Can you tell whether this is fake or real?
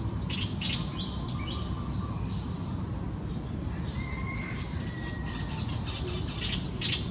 real